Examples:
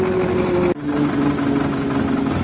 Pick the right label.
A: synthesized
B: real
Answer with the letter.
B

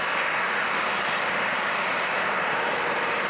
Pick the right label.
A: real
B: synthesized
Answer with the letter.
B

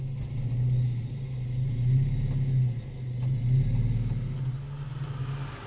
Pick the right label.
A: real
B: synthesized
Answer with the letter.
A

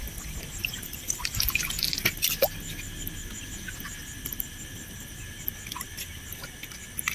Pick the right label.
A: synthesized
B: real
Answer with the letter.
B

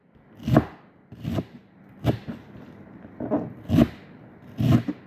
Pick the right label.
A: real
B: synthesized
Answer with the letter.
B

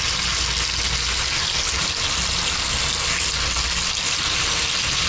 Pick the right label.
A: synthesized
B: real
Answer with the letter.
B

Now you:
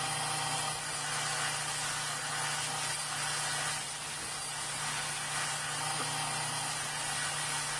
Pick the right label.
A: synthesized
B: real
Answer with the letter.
B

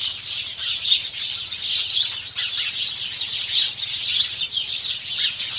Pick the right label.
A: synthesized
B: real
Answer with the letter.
A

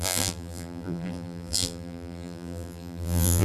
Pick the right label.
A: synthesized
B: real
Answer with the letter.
A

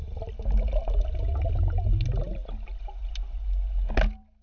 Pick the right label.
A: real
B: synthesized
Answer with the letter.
A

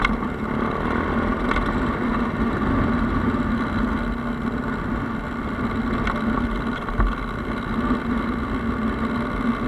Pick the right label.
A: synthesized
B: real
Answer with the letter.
B